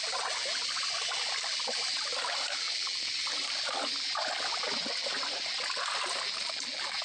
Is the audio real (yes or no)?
yes